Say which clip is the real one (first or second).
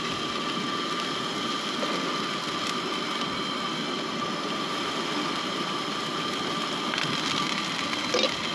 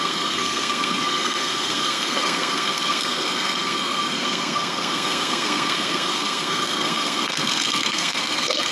first